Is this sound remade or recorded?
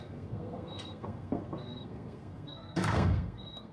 remade